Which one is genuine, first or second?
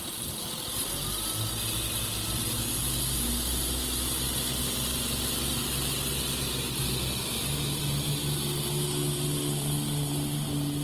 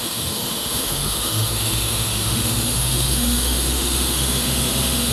first